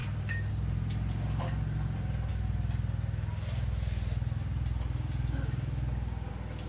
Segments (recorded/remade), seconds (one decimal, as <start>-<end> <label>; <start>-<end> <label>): 0.0-0.5 remade; 0.5-6.7 recorded